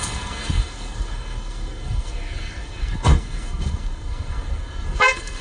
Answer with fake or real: fake